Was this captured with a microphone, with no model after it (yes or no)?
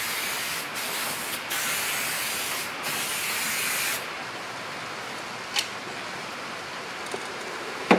yes